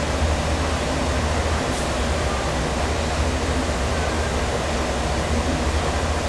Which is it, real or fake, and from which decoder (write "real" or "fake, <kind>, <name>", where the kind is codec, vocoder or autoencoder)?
real